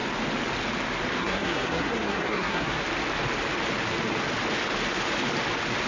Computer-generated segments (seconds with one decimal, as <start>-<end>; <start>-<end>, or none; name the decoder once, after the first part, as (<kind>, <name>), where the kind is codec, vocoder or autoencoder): 1.2-2.8 (codec, SNAC)